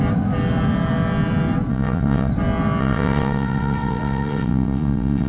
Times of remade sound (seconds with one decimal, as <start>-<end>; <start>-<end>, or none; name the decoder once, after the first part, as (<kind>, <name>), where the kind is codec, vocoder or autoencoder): 1.7-2.3 (vocoder, WaveNeXt); 2.8-5.3